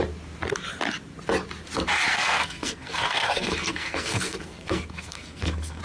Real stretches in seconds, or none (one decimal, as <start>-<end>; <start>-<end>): 0.0-2.1

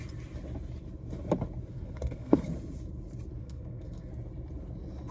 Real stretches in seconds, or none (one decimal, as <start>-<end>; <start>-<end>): 0.0-1.7; 2.5-3.4; 4.1-5.1

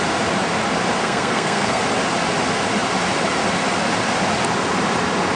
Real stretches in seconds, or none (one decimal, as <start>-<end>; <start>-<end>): 0.0-1.0; 1.8-5.4

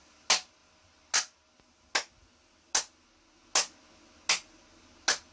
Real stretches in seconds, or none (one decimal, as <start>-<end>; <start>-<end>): 0.0-5.3

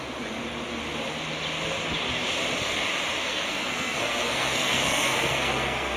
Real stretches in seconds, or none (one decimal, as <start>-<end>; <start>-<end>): 0.0-3.2

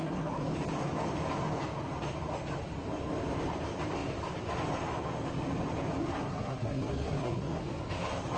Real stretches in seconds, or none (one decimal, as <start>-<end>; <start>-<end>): 0.5-6.0; 7.6-8.4

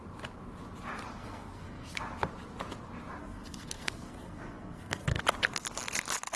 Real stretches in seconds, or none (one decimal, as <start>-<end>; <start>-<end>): 0.0-1.1; 2.0-3.2; 5.2-6.4